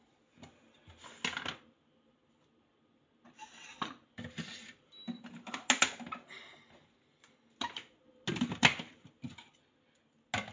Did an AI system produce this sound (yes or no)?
no